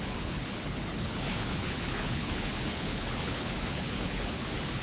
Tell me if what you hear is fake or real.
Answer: fake